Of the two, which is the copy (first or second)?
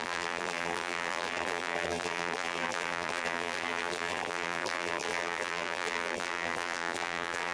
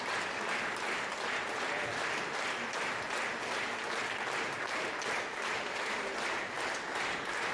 first